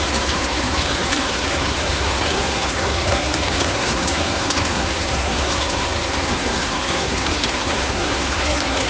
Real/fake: fake